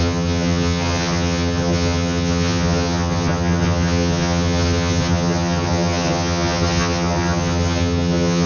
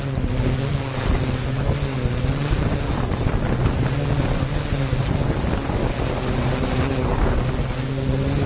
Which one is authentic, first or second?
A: second